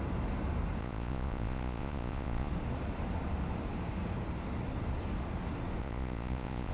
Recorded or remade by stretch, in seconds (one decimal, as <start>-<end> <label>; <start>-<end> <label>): 0.0-0.8 recorded; 0.8-2.5 remade; 2.5-5.8 recorded; 5.8-6.7 remade